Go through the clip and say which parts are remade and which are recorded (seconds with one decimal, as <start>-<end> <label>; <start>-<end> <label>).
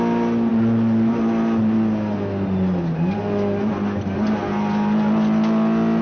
0.0-6.0 recorded